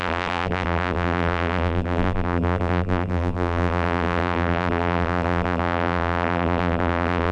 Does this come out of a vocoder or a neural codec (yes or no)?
yes